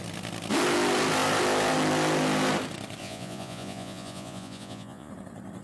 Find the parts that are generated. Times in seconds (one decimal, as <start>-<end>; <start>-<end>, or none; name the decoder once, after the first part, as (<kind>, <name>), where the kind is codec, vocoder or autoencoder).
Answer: 3.0-5.1 (vocoder, Vocos)

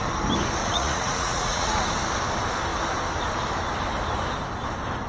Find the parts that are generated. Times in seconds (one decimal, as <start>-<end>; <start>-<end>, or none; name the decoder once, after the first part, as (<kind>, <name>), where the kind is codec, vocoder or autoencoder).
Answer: 0.6-1.8 (vocoder, Vocos)

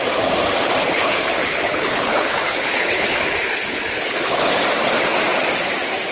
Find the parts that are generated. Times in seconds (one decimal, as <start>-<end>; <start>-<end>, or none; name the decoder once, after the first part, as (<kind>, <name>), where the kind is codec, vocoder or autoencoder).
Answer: 0.8-4.5 (codec, HILCodec)

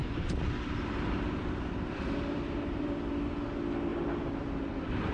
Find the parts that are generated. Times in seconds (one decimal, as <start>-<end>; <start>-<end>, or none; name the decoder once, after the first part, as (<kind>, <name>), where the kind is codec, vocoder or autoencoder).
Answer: 0.0-3.1 (vocoder, BigVGAN v2); 3.9-5.1

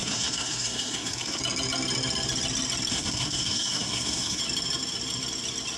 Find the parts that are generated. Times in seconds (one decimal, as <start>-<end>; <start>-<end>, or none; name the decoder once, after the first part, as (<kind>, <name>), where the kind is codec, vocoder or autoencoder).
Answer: 0.0-1.4 (codec, SNAC); 2.9-4.4

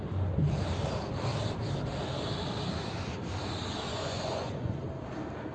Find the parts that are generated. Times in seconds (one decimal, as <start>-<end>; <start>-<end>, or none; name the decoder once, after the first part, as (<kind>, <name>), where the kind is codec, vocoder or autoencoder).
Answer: 3.9-4.7 (vocoder, Vocos)

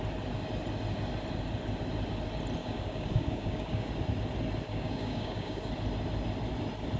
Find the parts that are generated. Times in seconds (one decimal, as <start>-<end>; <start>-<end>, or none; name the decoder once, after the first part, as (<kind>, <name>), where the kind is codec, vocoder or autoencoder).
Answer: 2.6-3.9 (codec, DAC); 4.7-5.7

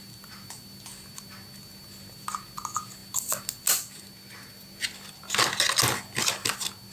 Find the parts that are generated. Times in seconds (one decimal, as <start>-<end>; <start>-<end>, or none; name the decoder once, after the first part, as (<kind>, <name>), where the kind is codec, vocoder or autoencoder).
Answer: none